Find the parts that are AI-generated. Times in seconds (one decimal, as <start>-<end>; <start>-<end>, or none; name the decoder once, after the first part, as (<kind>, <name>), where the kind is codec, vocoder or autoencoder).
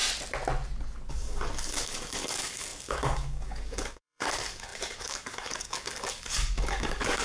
1.1-7.2 (codec, DAC)